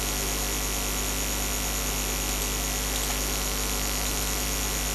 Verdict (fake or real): real